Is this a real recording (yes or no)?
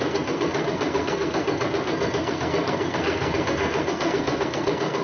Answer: no